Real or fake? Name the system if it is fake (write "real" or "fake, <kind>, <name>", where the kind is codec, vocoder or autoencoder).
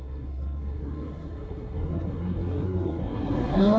fake, codec, SNAC